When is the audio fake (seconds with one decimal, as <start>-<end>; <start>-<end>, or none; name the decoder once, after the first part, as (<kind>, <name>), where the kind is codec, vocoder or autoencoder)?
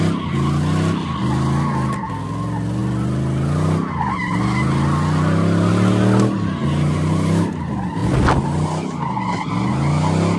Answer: none